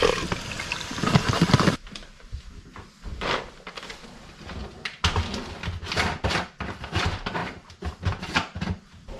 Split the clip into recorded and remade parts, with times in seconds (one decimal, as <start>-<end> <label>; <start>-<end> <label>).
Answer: 0.0-7.4 recorded; 7.4-8.2 remade; 8.2-9.2 recorded